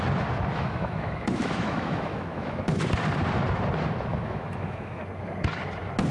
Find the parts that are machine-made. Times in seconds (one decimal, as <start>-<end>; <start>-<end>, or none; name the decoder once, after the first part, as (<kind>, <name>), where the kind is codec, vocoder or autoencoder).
0.5-2.8 (autoencoder, DAC-VAE); 4.1-5.0